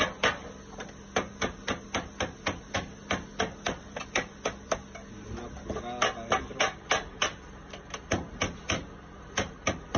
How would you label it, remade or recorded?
recorded